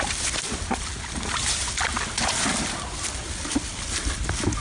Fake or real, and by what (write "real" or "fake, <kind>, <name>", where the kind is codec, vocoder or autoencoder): real